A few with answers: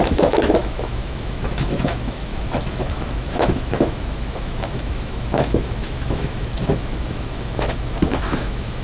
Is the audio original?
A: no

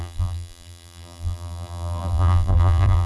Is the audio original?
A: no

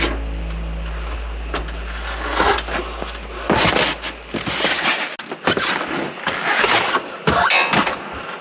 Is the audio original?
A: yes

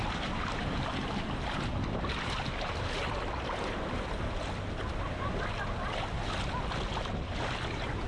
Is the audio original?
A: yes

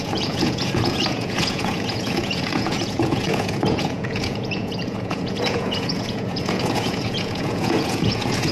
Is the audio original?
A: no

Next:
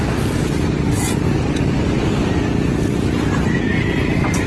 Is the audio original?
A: yes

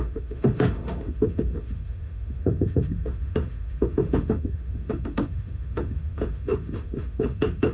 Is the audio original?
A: no